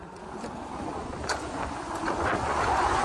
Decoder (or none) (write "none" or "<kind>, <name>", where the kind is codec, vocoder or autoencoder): vocoder, Vocos